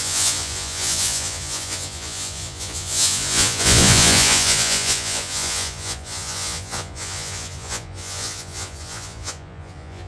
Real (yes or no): no